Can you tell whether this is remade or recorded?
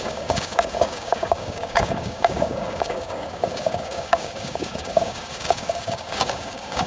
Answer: remade